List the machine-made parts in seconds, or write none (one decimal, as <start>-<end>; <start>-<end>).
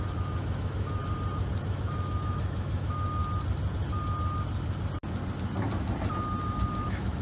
0.0-1.0; 1.7-3.2; 6.8-7.2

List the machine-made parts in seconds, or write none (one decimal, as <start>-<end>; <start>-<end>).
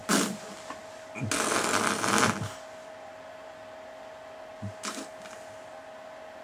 none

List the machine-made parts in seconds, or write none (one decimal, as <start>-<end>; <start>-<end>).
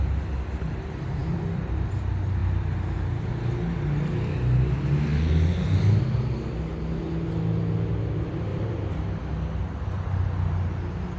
1.2-2.0; 8.5-9.2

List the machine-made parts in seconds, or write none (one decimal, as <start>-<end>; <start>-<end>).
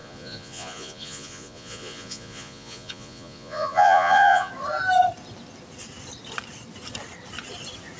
0.0-4.5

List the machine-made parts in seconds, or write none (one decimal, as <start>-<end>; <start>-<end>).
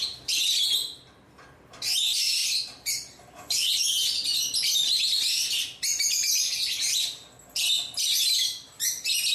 none